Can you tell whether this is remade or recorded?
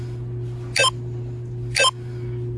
recorded